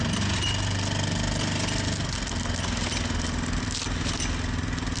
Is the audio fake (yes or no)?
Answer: no